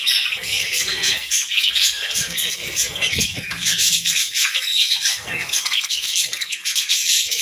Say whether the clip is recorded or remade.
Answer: remade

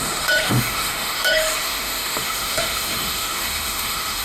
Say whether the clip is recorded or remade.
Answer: remade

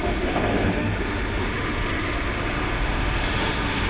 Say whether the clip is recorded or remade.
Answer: remade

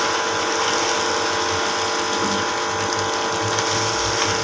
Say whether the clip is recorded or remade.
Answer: recorded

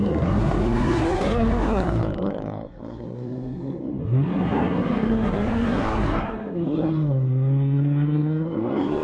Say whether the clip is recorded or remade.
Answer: remade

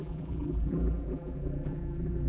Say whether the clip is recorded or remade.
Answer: remade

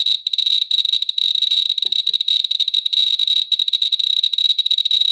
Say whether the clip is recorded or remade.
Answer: remade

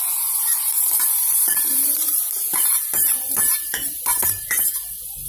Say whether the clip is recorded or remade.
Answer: remade